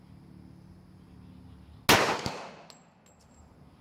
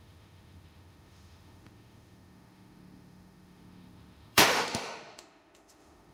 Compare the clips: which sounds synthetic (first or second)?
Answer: second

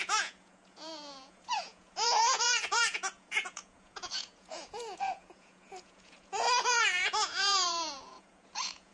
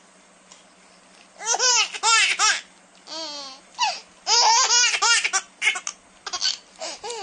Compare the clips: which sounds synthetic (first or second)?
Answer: first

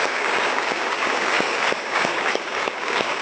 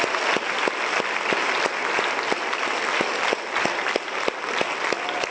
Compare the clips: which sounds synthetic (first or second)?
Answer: first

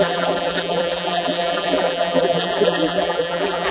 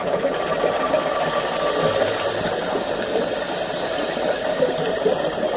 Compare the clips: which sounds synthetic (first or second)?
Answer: first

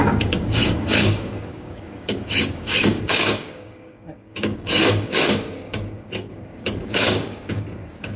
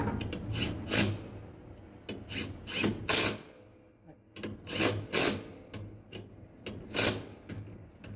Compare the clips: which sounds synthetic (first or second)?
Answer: first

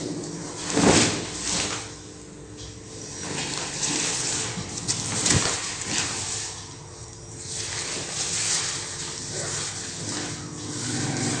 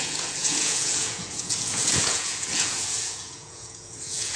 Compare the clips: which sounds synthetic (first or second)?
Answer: second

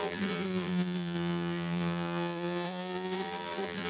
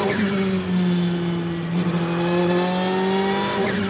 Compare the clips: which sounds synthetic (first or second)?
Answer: first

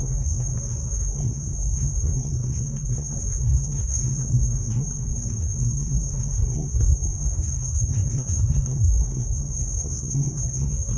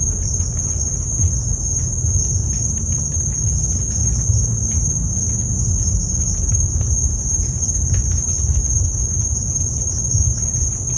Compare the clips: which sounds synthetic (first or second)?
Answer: first